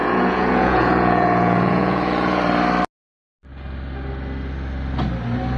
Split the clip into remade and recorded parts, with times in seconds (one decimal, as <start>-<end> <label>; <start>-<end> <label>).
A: 0.0-2.4 remade; 2.4-5.6 recorded